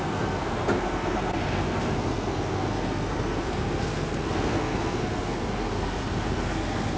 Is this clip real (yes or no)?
no